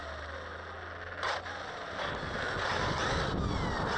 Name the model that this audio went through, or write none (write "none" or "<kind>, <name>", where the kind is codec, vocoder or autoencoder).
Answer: none